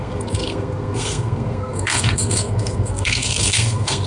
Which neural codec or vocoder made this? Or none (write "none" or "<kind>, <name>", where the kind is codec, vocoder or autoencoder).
codec, SNAC